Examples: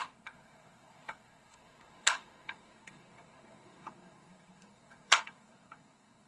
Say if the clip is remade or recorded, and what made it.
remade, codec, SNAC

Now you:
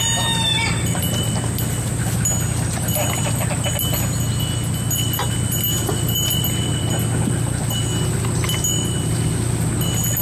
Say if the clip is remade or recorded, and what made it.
recorded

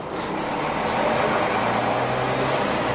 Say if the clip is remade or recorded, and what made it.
recorded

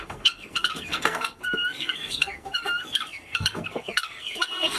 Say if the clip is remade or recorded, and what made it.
remade, codec, SNAC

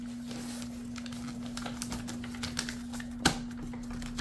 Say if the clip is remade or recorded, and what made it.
recorded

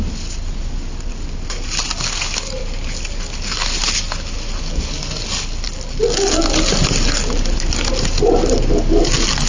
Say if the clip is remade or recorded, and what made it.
recorded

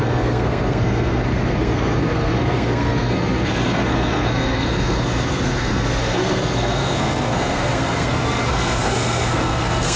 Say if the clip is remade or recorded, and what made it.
remade, codec, SNAC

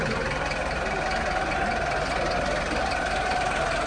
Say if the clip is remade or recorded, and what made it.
recorded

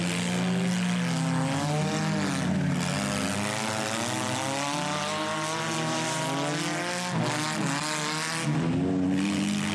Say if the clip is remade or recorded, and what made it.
recorded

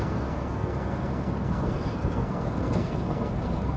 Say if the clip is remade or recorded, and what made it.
remade, codec, SNAC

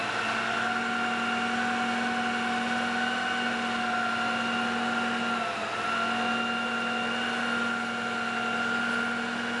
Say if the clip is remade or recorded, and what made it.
recorded